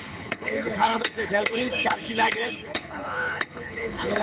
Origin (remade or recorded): remade